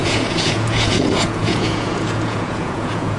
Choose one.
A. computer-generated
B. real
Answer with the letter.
A